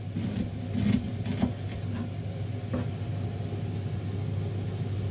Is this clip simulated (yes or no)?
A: no